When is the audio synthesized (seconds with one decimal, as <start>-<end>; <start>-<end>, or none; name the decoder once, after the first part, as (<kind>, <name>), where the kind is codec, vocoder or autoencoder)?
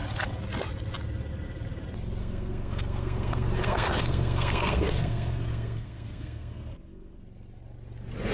2.2-7.2 (codec, SNAC)